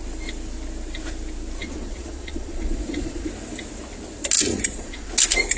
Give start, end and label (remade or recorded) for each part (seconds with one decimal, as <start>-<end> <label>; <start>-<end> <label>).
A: 0.0-1.6 recorded; 1.6-3.3 remade; 3.3-4.5 recorded; 4.5-5.1 remade; 5.1-5.6 recorded